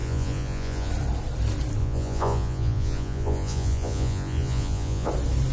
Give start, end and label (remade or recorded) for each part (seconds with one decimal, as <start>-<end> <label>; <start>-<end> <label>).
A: 0.0-0.9 remade; 0.9-1.8 recorded; 1.8-5.1 remade; 5.1-5.5 recorded